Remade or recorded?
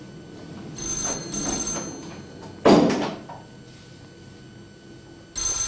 recorded